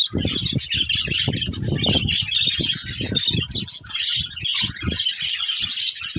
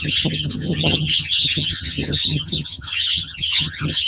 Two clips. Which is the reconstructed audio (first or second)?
second